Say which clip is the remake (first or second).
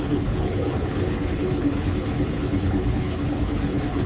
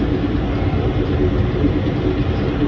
first